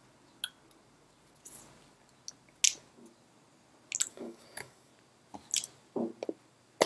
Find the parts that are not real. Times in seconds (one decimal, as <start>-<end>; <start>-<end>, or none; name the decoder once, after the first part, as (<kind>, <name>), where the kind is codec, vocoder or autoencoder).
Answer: 4.1-4.9 (codec, DAC)